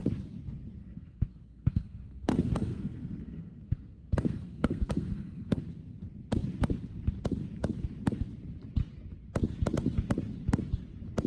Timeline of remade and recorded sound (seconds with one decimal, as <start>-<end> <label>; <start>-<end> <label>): 0.0-0.8 recorded; 0.8-5.6 remade; 5.6-11.3 recorded

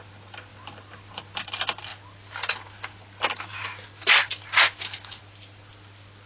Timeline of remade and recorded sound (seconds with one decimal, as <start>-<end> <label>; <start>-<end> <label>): 0.0-6.3 recorded

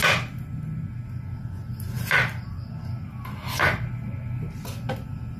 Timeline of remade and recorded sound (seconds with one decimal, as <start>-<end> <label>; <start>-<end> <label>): 0.0-5.4 recorded

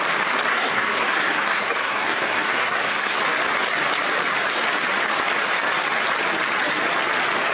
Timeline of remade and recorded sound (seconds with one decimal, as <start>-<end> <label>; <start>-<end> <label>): 0.0-0.5 recorded; 0.5-3.2 remade; 3.2-7.5 recorded

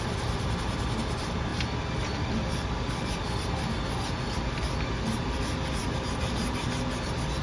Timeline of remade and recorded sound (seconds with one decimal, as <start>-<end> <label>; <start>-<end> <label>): 0.0-7.4 recorded

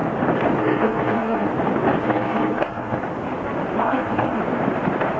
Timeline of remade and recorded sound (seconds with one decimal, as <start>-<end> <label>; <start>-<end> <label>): 0.0-0.6 recorded; 0.6-1.5 remade; 1.5-2.0 recorded; 2.0-3.0 remade; 3.0-3.8 recorded; 3.8-4.4 remade; 4.4-5.2 recorded